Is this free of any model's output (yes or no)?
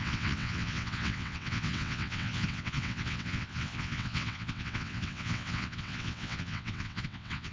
no